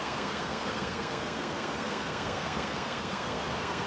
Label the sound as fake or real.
fake